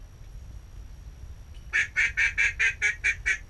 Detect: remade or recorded recorded